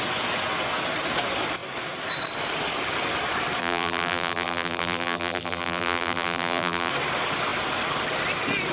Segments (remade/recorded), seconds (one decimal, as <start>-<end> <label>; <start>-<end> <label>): 0.0-3.6 recorded; 3.6-6.9 remade; 6.9-8.7 recorded